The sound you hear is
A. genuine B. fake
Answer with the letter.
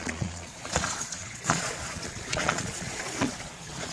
B